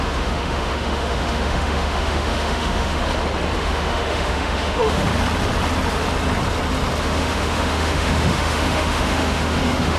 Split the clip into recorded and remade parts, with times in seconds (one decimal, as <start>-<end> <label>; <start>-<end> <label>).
0.0-3.0 remade; 3.0-3.6 recorded; 3.6-5.1 remade; 5.1-7.0 recorded; 7.0-10.0 remade